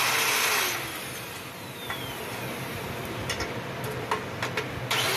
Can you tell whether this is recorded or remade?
recorded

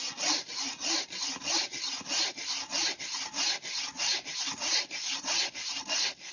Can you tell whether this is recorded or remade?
recorded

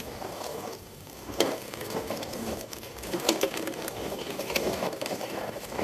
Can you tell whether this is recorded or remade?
remade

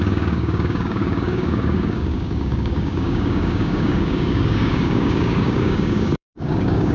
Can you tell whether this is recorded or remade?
remade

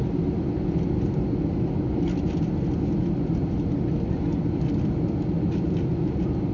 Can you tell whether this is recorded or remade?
recorded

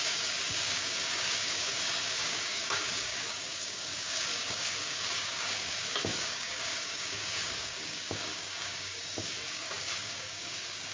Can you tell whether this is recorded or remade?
remade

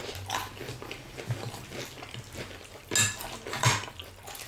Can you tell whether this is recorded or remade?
recorded